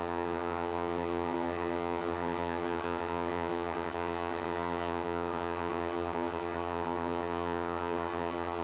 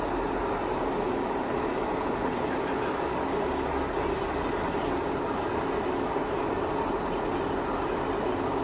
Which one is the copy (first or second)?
first